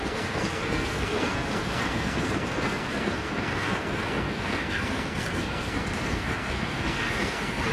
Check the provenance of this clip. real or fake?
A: fake